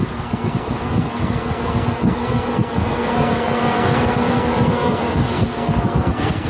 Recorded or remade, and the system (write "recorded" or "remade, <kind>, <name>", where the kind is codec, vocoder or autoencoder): remade, codec, SNAC